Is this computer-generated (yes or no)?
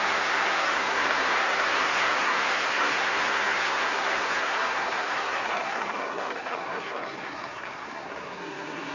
yes